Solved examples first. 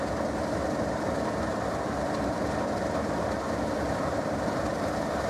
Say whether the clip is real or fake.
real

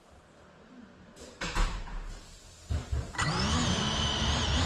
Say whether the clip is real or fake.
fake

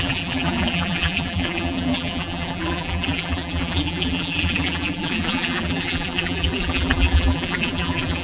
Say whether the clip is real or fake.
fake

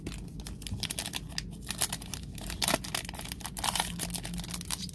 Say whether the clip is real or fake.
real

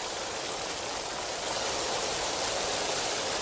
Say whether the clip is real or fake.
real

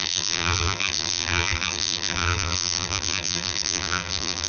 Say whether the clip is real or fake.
fake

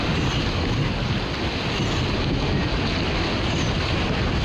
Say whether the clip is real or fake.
real